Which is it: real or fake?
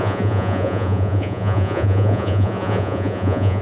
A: fake